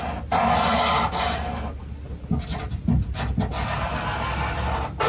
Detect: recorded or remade recorded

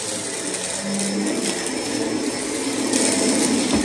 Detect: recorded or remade recorded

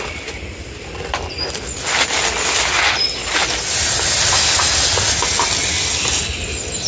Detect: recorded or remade recorded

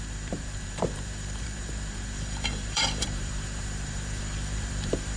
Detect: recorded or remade remade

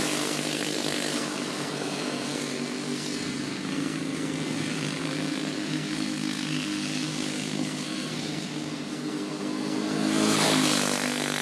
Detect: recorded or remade remade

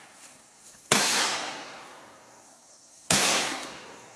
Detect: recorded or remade remade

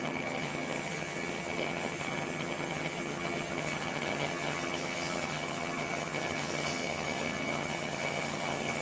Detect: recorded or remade remade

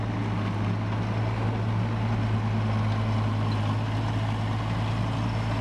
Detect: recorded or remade recorded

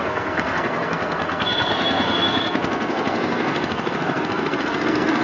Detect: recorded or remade remade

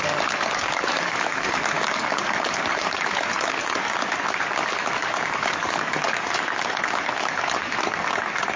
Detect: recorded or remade remade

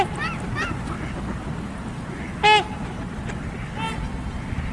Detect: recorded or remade recorded